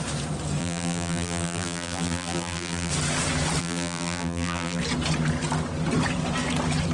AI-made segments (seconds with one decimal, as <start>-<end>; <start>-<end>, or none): 0.6-2.9; 3.6-4.8